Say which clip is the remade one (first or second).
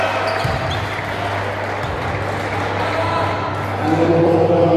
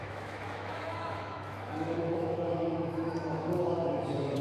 second